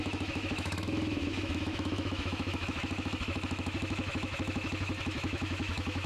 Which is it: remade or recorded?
remade